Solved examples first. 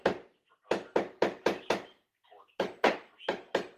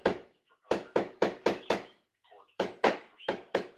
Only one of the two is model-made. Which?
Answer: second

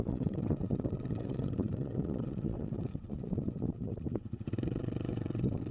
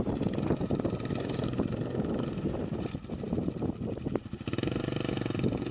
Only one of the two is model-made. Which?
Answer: first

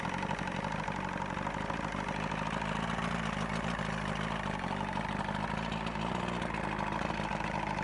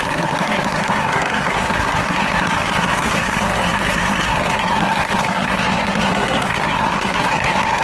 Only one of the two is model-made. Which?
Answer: second